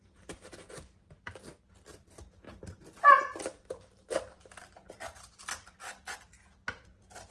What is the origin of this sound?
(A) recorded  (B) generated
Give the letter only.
B